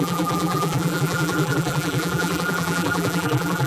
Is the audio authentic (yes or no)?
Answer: no